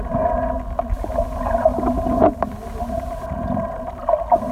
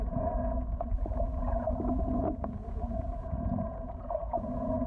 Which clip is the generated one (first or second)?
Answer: second